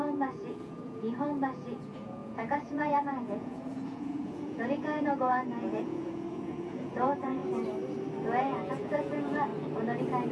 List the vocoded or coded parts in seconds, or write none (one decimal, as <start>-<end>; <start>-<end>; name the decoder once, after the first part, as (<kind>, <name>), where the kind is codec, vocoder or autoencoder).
0.0-7.4 (vocoder, Vocos); 8.2-9.5